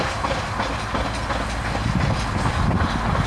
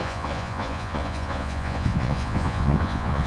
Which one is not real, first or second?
second